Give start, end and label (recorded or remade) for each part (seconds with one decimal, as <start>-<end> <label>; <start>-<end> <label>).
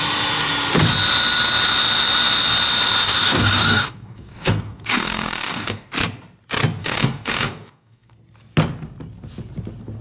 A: 0.0-3.0 recorded; 3.0-5.9 remade; 5.9-6.8 recorded; 6.8-8.1 remade; 8.1-10.0 recorded